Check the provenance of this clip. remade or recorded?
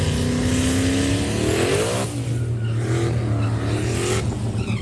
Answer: recorded